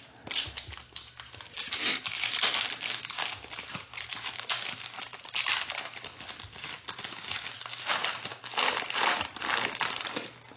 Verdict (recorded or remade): recorded